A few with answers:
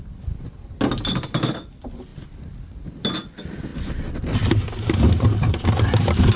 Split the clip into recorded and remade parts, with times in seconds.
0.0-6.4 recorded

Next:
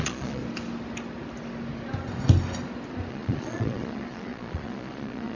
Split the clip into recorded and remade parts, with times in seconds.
0.0-0.4 remade; 0.4-3.1 recorded; 3.1-5.4 remade